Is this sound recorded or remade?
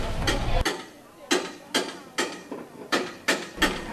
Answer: recorded